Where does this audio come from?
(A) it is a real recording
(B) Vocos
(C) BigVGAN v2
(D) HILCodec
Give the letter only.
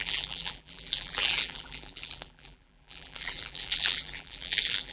C